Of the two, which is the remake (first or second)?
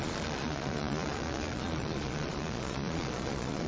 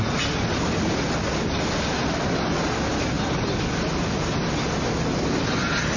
first